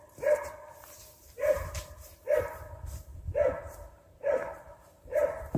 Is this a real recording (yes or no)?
no